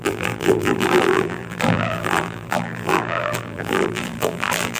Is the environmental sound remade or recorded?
remade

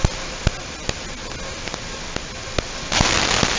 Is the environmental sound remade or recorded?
recorded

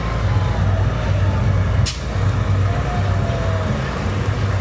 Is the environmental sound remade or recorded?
recorded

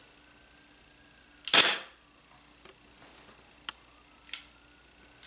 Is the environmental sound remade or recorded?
recorded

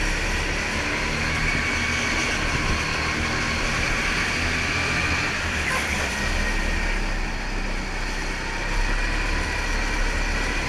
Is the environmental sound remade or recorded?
recorded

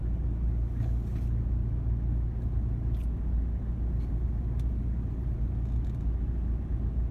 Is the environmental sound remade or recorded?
recorded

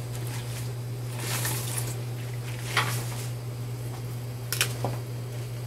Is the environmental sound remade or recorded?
recorded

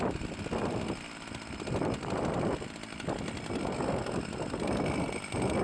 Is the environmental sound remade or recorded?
recorded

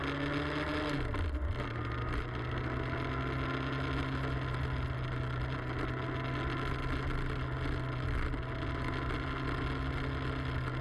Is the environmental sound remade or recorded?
recorded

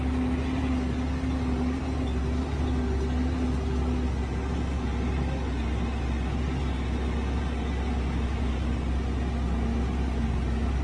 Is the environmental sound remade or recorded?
recorded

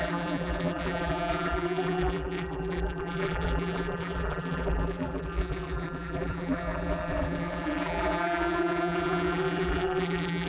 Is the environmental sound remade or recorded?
remade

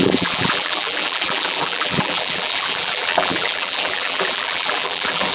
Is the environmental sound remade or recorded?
remade